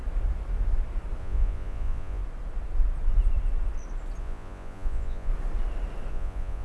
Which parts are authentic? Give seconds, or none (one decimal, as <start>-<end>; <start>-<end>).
0.0-1.2; 2.2-4.2; 5.3-6.1